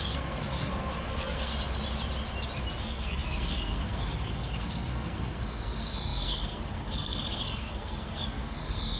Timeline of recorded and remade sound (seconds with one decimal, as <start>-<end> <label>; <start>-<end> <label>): 0.0-1.5 remade; 1.5-2.8 recorded; 2.8-9.0 remade